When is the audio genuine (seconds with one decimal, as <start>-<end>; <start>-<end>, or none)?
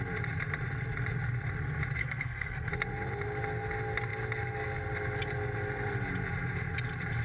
0.0-2.0; 2.7-7.2